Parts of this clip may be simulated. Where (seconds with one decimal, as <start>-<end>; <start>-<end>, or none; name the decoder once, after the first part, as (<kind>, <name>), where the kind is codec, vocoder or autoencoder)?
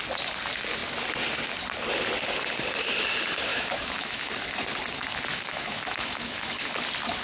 3.5-4.3 (autoencoder, DAC-VAE); 5.3-6.5